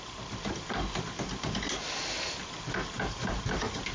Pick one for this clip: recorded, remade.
recorded